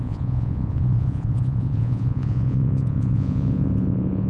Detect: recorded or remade remade